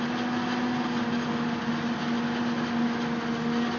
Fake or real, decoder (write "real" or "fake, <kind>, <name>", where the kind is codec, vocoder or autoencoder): real